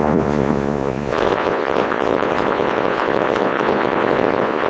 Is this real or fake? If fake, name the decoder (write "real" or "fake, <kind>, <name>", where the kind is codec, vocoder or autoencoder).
fake, vocoder, Vocos